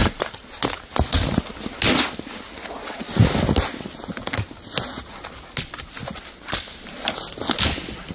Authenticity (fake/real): real